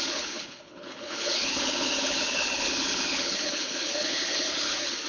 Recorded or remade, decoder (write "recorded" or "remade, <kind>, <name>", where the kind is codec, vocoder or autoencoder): remade, codec, HILCodec